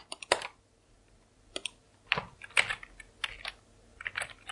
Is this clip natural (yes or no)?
yes